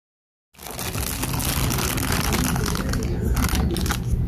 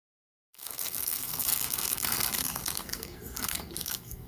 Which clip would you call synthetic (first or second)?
second